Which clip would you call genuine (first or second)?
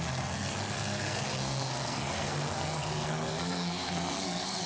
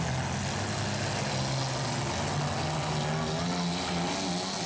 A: second